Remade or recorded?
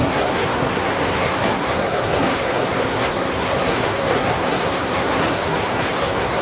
remade